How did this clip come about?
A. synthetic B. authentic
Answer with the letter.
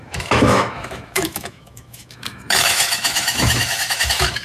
A